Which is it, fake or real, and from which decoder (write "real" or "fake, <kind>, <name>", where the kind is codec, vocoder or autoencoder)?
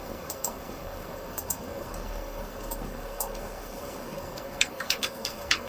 fake, codec, SNAC